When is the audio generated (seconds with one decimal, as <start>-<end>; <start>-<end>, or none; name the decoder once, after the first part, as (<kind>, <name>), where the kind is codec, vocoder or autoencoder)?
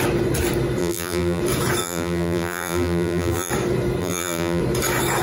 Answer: 0.8-1.4 (vocoder, BigVGAN v2); 1.8-3.5; 4.0-4.6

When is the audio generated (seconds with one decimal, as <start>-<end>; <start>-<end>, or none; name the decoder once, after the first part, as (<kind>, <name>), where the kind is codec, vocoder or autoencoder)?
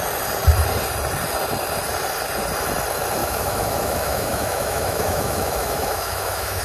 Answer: 3.2-6.6 (autoencoder, DAC-VAE)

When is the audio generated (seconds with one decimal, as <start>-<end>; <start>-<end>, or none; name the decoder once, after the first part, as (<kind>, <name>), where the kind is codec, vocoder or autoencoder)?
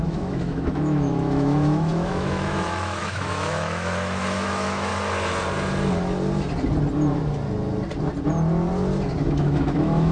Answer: 0.0-4.9 (autoencoder, DAC-VAE); 9.3-10.1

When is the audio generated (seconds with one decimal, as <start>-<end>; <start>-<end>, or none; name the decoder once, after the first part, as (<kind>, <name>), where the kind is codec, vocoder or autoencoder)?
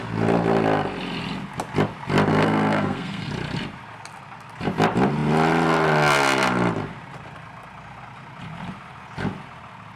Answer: 2.3-3.3 (codec, SNAC)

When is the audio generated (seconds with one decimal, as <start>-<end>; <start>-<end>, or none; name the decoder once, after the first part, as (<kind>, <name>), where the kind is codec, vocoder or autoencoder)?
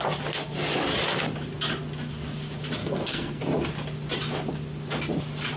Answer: 2.8-3.4 (codec, SNAC)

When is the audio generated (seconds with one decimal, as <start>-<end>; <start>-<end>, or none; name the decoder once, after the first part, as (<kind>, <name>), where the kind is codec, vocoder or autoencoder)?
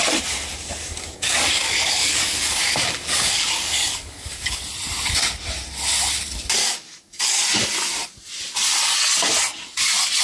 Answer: 0.5-4.6 (codec, DAC); 6.6-7.4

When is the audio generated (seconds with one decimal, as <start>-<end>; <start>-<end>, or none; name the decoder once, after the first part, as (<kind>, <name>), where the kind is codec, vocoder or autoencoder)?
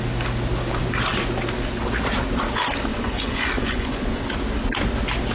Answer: 2.9-4.2 (vocoder, Vocos)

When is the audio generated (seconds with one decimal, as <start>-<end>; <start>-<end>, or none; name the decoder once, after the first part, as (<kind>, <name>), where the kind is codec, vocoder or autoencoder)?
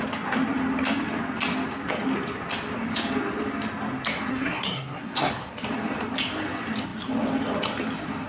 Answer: 4.3-5.3 (codec, SNAC)